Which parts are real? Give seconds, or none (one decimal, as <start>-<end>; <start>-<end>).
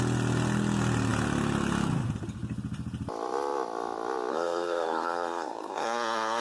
0.0-4.3